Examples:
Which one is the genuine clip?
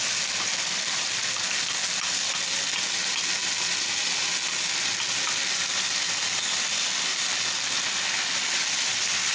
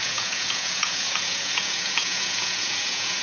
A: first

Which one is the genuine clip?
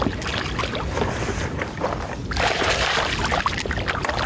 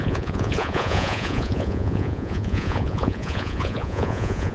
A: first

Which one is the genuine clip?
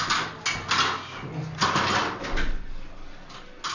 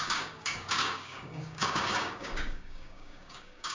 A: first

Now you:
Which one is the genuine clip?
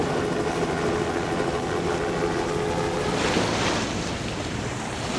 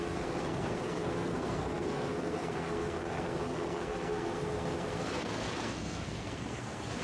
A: first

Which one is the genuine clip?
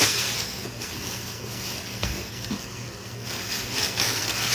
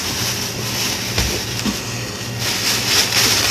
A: second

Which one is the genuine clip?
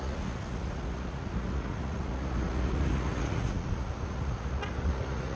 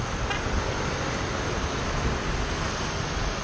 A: second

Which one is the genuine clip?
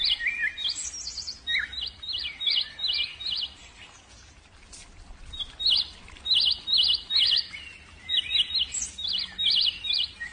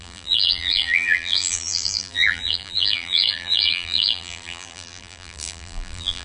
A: first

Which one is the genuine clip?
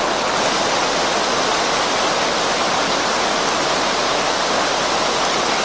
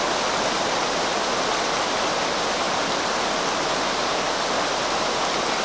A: first